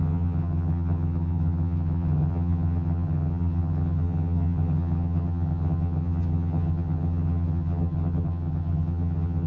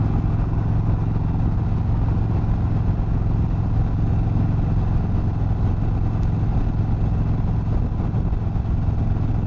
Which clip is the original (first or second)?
second